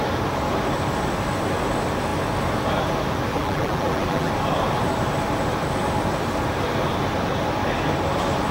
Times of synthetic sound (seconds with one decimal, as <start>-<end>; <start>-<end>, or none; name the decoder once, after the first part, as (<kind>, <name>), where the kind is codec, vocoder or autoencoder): 3.3-4.3 (vocoder, BigVGAN v2)